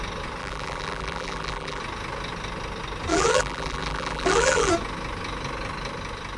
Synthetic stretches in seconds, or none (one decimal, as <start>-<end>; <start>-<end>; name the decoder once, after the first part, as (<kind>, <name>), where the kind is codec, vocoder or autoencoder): 0.4-1.8 (vocoder, BigVGAN v2); 3.1-4.7